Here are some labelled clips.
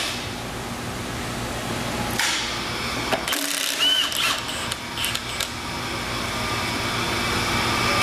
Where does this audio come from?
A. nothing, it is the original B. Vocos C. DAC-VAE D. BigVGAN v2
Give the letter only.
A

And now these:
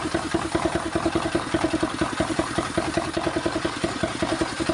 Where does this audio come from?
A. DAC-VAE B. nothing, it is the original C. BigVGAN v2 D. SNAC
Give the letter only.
B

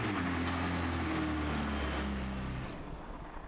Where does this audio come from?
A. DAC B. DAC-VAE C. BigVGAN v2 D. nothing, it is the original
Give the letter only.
D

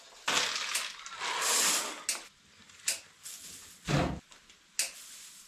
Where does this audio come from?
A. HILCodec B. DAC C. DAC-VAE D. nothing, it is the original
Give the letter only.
D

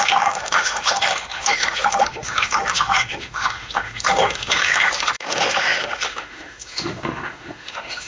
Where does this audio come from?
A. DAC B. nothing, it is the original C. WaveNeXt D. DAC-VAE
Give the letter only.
D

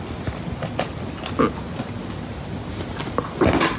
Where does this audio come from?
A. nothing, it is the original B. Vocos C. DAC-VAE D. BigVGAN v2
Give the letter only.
A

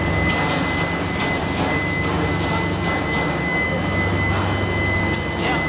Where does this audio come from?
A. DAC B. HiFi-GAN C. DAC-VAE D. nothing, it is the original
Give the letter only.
D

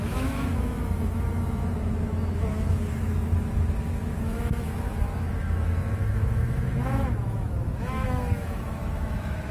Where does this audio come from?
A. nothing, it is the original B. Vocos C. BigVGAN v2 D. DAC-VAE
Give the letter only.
D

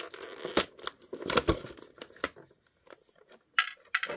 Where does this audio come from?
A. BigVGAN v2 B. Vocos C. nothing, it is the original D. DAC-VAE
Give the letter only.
C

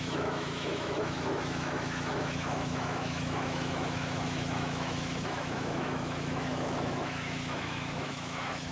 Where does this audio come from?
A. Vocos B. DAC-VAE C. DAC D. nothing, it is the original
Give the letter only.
B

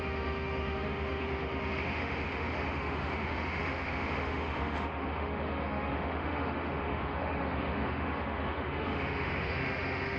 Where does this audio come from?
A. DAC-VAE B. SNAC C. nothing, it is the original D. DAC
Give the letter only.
A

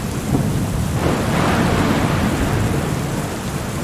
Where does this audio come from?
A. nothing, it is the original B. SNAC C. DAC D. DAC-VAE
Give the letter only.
A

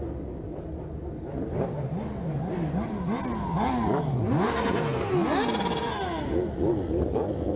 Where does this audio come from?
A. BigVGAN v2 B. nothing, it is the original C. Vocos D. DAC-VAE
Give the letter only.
B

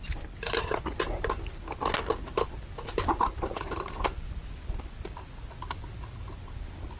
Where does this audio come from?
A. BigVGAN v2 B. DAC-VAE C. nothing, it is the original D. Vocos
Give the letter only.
C